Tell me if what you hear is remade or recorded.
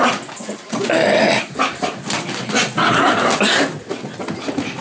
recorded